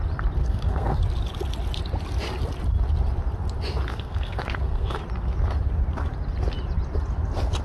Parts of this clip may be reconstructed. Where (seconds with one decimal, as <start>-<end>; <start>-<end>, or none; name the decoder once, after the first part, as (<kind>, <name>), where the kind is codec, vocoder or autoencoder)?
0.4-1.0 (codec, SNAC); 3.9-5.0